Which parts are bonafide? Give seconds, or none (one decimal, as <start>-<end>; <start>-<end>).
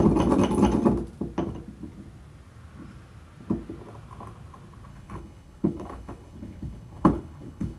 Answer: 0.0-4.9